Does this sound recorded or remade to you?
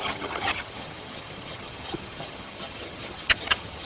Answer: remade